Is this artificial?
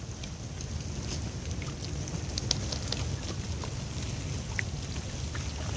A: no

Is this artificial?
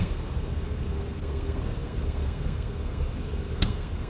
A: yes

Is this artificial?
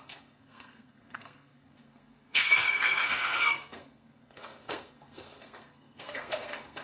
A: yes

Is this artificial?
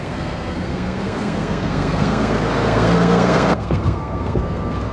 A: yes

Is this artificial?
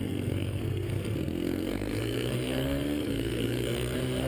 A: yes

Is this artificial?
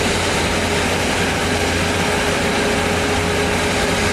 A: no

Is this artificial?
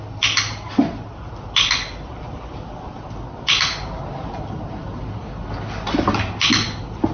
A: no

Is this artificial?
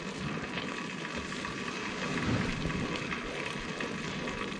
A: no